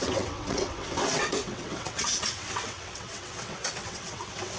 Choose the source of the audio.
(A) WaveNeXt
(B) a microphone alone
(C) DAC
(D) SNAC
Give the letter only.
A